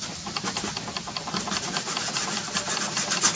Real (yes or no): yes